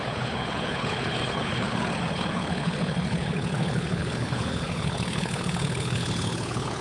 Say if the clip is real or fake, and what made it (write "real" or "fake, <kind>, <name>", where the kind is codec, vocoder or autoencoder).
fake, codec, HILCodec